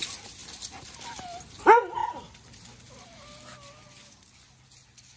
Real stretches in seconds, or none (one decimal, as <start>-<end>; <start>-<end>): 0.0-5.2